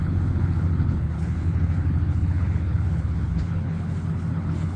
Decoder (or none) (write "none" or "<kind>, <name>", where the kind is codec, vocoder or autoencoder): codec, HILCodec